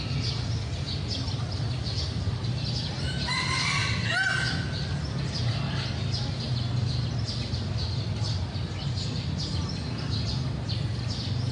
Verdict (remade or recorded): recorded